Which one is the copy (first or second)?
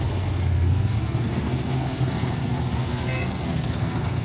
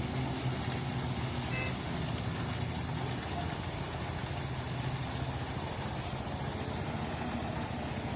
first